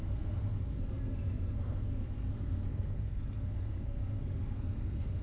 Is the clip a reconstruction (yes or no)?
yes